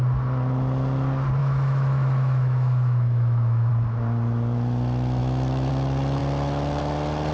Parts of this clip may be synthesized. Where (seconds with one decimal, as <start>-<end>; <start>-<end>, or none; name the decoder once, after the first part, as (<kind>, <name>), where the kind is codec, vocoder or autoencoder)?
1.4-3.7 (autoencoder, DAC-VAE); 5.2-5.7